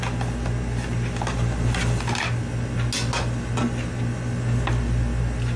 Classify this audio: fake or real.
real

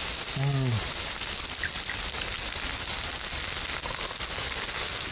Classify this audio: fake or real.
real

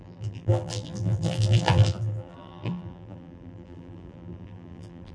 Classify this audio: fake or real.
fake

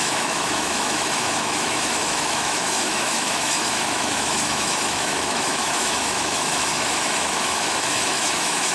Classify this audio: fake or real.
fake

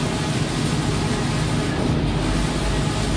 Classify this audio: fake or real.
real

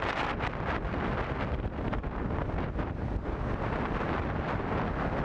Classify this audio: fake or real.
real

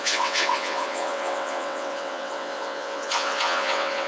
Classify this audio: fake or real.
fake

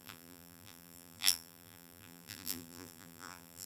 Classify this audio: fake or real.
fake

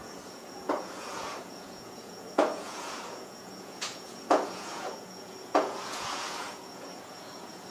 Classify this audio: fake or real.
fake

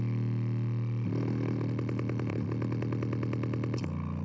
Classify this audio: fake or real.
real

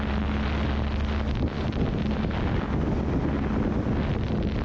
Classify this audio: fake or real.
real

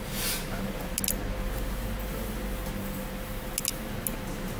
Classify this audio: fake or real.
real